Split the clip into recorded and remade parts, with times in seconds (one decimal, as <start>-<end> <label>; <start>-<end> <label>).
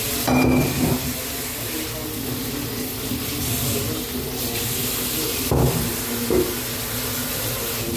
0.0-8.0 recorded